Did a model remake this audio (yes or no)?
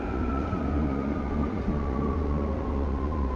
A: yes